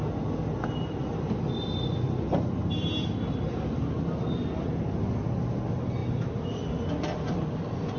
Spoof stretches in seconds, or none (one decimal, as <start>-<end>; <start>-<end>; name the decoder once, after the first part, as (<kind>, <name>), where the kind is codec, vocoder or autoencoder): none